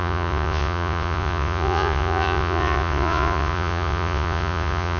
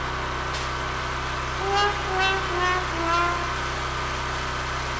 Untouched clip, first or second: second